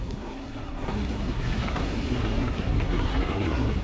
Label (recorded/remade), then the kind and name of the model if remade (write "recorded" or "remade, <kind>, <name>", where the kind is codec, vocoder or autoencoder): remade, codec, SNAC